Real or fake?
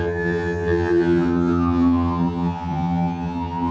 fake